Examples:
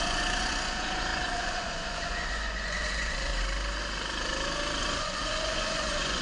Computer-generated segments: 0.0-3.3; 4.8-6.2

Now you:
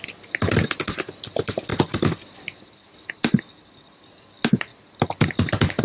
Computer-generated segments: 1.7-2.6

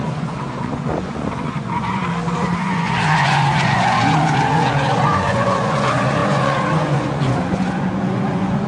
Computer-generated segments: 0.0-2.0; 2.6-8.7

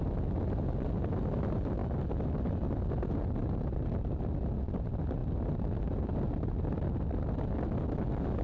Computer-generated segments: none

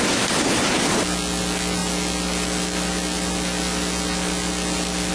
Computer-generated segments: none

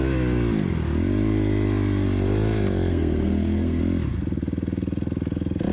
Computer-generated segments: 2.9-3.8

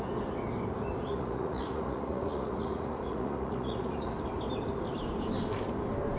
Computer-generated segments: 1.1-4.1

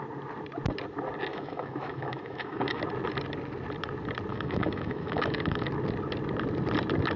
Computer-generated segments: 1.3-2.8; 4.3-5.7